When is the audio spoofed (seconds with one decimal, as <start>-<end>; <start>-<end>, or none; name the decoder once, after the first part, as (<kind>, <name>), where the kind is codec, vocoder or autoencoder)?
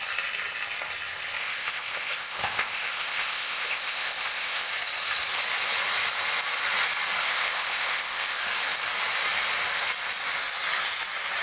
1.4-4.7 (codec, ZipCodec); 7.2-8.4